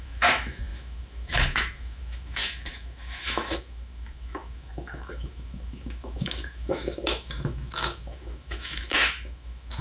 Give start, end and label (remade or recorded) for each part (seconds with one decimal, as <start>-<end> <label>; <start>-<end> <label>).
0.0-9.8 remade